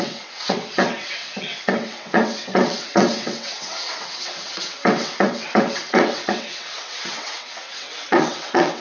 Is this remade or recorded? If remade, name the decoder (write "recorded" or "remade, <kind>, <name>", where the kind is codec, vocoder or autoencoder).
remade, vocoder, WaveNeXt